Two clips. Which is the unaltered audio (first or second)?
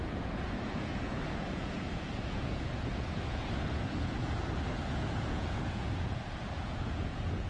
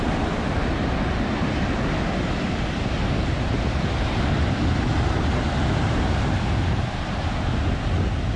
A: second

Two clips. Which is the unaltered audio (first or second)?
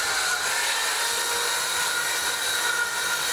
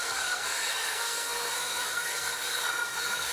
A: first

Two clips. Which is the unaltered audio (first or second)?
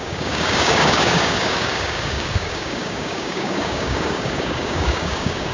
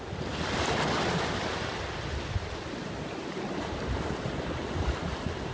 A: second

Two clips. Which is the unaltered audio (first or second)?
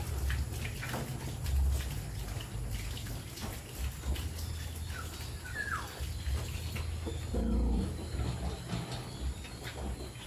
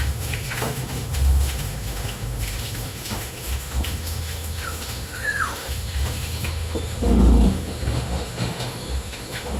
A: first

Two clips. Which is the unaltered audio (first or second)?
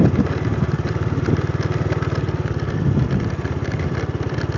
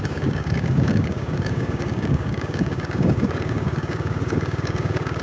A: first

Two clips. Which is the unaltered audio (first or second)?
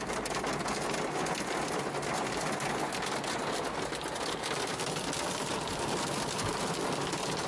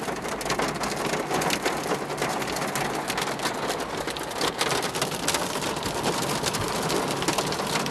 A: first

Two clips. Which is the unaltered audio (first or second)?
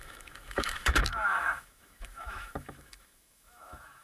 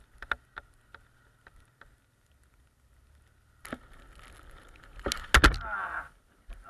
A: second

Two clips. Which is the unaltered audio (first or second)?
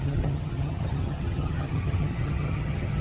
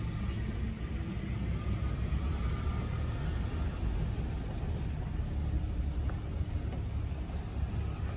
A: second